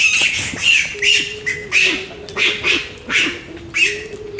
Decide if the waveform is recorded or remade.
recorded